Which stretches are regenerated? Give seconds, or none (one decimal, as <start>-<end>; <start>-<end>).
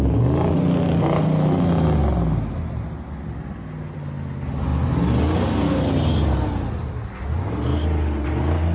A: none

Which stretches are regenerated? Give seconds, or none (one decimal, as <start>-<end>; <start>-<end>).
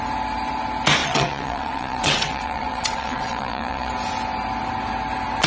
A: 1.0-3.9